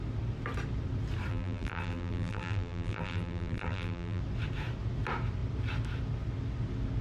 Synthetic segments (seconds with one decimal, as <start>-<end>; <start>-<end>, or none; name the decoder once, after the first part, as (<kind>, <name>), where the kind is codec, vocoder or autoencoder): 1.3-4.2 (vocoder, BigVGAN v2)

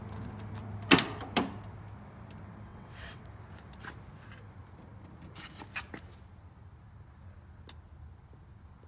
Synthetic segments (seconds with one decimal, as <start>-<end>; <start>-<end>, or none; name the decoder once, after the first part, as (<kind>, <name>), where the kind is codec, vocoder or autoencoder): 2.7-3.2 (vocoder, WaveNeXt)

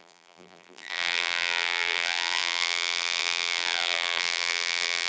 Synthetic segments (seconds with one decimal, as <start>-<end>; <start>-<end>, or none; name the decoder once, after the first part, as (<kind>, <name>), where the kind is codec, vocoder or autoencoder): 0.0-5.1 (vocoder, BigVGAN v2)

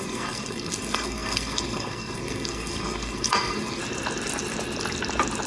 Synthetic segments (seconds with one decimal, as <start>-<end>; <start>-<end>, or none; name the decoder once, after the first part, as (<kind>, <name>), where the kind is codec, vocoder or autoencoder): 0.0-3.8 (codec, SNAC)

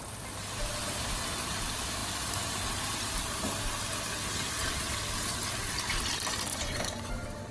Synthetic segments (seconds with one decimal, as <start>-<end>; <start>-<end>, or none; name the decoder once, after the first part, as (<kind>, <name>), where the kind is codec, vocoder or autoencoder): 6.5-7.1 (vocoder, Vocos)

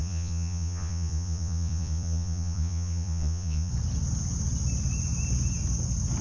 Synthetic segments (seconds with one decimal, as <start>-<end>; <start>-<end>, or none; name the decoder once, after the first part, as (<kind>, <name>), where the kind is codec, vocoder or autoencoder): 0.0-3.7 (vocoder, Vocos)

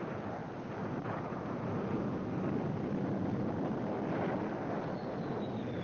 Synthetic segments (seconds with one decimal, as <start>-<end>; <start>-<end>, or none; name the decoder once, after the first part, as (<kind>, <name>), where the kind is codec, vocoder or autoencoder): none

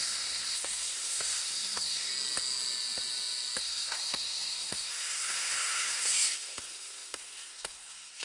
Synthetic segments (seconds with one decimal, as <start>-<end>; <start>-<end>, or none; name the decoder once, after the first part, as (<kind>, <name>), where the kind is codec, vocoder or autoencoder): 0.0-2.1 (codec, SNAC); 3.6-8.2